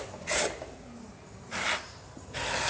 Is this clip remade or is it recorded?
remade